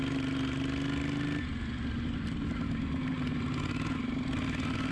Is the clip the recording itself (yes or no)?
yes